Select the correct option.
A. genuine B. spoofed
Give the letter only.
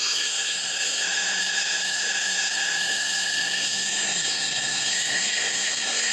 B